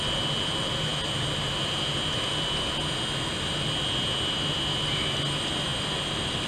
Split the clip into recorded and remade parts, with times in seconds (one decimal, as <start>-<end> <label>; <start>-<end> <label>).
0.0-6.5 recorded